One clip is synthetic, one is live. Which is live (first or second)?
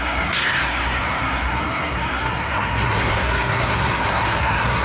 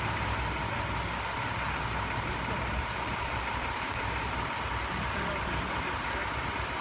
second